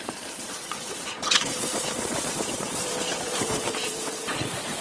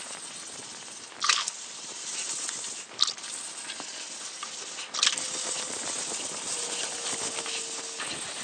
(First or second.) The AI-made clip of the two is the first